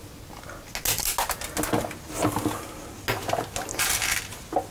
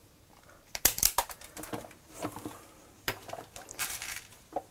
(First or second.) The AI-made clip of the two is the second